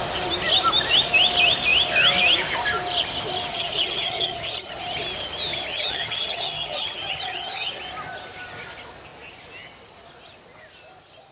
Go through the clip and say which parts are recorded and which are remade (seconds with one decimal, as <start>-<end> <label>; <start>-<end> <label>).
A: 0.0-3.5 recorded; 3.5-4.7 remade; 4.7-5.7 recorded; 5.7-7.8 remade; 7.8-11.3 recorded